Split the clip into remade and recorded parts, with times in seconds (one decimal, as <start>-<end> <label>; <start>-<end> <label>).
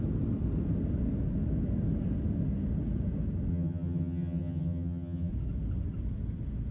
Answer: 0.0-3.5 recorded; 3.5-5.3 remade; 5.3-6.7 recorded